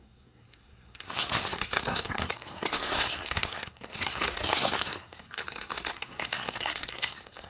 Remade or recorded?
remade